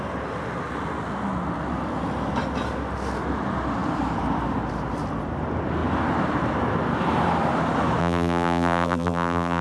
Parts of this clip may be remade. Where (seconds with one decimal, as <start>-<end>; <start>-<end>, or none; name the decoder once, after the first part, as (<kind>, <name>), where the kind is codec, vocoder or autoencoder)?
8.0-9.6 (vocoder, BigVGAN v2)